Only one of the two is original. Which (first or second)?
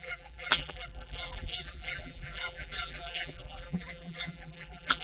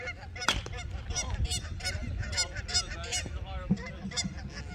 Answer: second